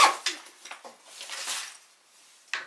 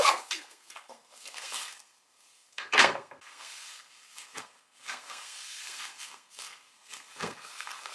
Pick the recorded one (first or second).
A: first